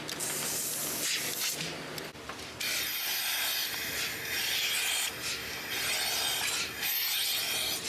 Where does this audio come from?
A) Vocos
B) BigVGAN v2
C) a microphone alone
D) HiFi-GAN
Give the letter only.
C